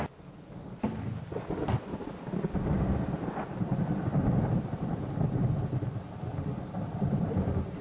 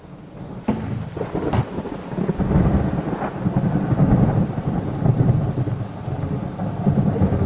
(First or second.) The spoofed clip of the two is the first